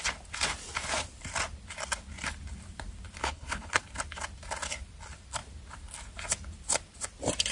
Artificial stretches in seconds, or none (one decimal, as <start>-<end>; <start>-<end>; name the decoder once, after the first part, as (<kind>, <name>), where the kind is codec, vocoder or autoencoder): 3.2-3.8 (codec, HILCodec)